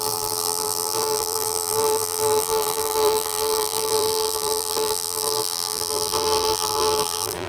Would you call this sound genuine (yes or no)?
no